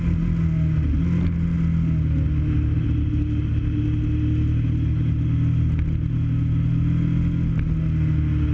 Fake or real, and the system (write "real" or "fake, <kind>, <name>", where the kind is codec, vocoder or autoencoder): real